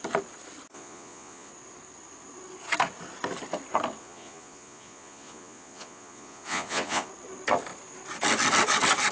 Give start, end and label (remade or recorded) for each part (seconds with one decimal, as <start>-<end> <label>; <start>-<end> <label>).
0.0-0.7 recorded; 0.7-1.5 remade; 1.5-4.0 recorded; 4.0-7.1 remade; 7.1-9.1 recorded

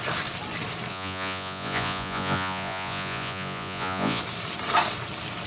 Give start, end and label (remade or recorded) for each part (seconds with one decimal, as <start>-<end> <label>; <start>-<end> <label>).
0.0-0.9 recorded; 0.9-4.2 remade; 4.2-5.5 recorded

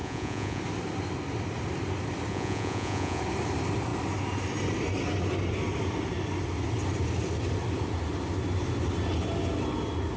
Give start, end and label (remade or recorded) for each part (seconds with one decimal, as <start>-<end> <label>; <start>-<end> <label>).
0.0-0.6 remade; 0.6-2.3 recorded; 2.3-3.2 remade; 3.2-10.2 recorded

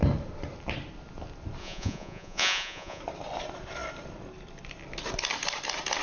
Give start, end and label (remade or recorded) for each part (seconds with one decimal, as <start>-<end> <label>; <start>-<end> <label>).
0.0-1.6 recorded; 1.6-3.0 remade; 3.0-6.0 recorded

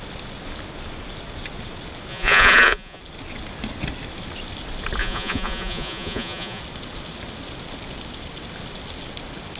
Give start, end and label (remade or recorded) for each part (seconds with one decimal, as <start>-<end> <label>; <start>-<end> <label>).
0.0-2.1 recorded; 2.1-3.0 remade; 3.0-5.0 recorded; 5.0-6.6 remade; 6.6-9.6 recorded

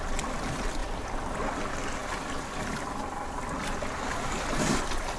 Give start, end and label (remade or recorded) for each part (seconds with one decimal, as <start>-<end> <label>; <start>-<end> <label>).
0.0-5.2 recorded

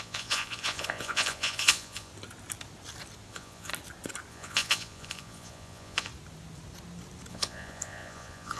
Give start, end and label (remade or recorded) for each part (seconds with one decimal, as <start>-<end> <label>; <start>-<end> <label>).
0.0-2.1 remade; 2.1-3.3 recorded; 3.3-3.7 remade; 3.7-4.3 recorded; 4.3-6.1 remade; 6.1-7.3 recorded; 7.3-8.6 remade